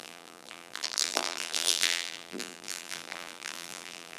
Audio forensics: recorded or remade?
remade